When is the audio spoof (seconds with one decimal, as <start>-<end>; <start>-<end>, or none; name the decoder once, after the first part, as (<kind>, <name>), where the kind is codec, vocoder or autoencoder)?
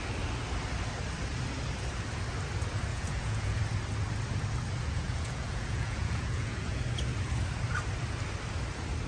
2.9-3.6 (vocoder, Vocos); 4.8-6.8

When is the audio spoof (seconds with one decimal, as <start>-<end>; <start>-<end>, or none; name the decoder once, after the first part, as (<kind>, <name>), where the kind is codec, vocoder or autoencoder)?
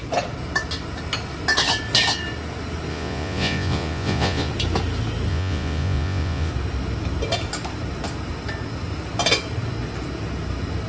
2.9-4.5 (vocoder, Vocos); 5.3-6.5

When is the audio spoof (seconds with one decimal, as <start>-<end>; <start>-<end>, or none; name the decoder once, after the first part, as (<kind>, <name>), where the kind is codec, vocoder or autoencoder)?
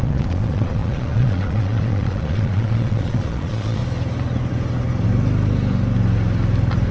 0.0-3.8 (vocoder, Vocos)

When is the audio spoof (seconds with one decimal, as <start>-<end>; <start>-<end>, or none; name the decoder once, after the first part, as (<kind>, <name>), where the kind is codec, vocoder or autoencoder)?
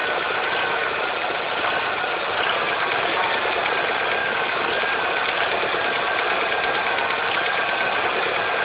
4.2-4.7 (codec, DAC)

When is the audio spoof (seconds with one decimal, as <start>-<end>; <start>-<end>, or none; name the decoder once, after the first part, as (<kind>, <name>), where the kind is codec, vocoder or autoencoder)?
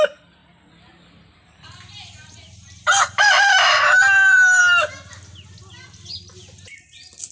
0.4-4.6 (vocoder, BigVGAN v2)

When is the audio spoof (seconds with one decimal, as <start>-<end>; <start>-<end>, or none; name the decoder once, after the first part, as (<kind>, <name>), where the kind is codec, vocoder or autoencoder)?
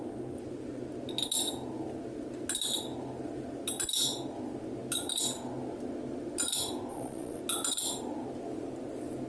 6.9-7.4 (vocoder, Vocos)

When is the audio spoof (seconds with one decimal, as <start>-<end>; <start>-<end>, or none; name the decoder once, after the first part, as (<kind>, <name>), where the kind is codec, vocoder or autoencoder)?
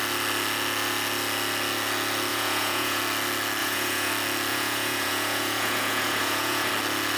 2.3-3.0 (vocoder, Vocos); 3.6-4.1; 4.5-6.7